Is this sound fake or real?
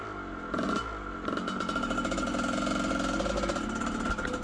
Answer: real